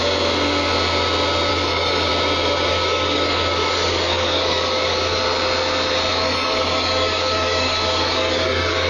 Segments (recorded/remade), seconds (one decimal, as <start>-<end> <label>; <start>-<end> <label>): 0.0-1.5 recorded; 1.5-2.1 remade; 2.1-2.7 recorded; 2.7-5.2 remade; 5.2-6.1 recorded; 6.1-8.9 remade